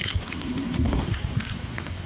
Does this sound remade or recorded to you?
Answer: remade